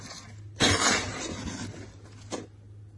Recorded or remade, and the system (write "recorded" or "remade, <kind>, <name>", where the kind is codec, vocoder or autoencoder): recorded